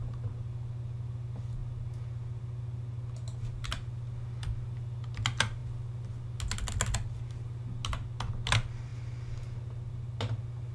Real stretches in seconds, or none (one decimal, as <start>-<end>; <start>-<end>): 0.0-10.7